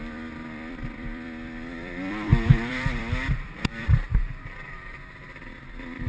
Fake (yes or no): yes